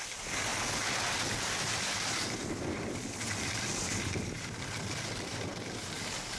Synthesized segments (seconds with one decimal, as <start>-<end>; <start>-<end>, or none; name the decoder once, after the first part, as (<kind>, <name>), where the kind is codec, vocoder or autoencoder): 5.3-5.8 (vocoder, BigVGAN v2)